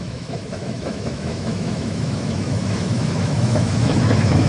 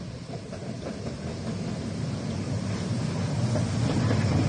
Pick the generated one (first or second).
first